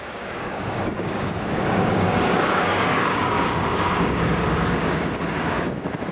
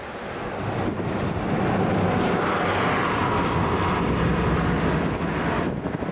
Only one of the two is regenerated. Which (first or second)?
first